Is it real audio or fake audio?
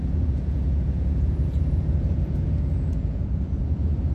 fake